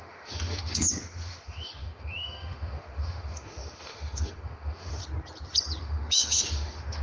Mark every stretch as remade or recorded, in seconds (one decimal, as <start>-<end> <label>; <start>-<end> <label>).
0.0-5.0 remade; 5.0-5.8 recorded; 5.8-7.0 remade